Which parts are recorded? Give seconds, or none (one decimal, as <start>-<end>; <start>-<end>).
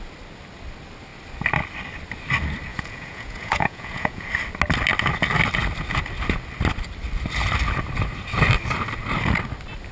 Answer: 0.0-2.7; 4.3-9.9